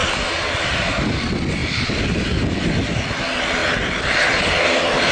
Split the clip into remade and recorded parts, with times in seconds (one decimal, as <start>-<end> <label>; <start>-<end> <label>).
0.0-0.7 remade; 0.7-1.6 recorded; 1.6-2.4 remade; 2.4-3.6 recorded; 3.6-5.1 remade